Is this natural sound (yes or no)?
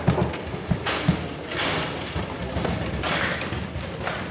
yes